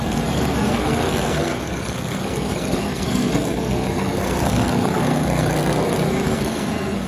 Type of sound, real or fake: fake